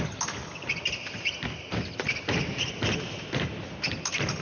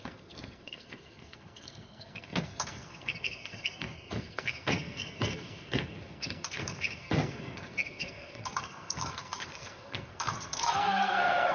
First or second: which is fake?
second